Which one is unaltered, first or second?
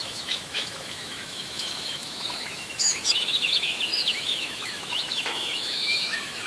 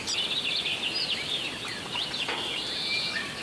second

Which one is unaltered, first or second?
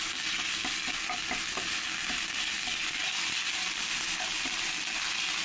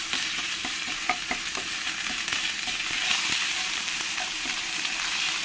first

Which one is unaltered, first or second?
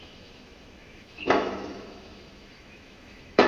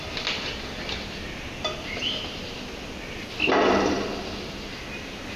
second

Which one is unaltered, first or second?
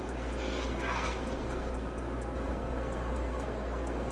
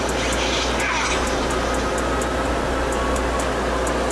second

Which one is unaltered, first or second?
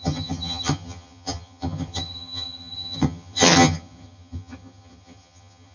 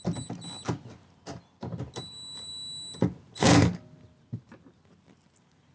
second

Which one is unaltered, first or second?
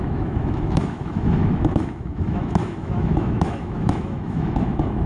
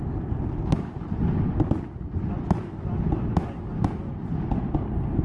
second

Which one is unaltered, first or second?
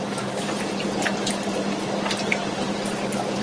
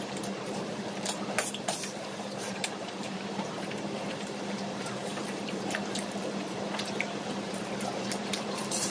first